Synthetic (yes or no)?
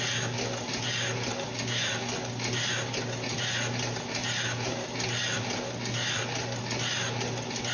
no